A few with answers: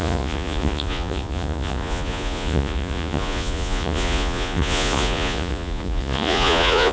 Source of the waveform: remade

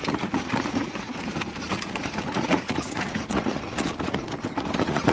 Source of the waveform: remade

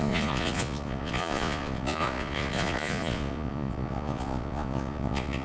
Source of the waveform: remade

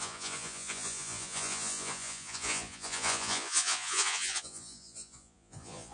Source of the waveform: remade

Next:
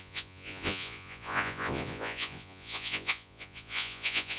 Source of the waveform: remade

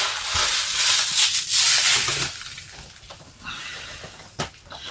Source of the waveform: recorded